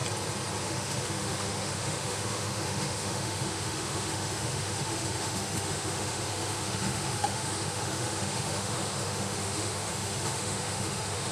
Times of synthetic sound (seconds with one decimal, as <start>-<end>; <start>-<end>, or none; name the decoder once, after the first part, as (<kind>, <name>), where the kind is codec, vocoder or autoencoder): 0.6-11.3 (autoencoder, DAC-VAE)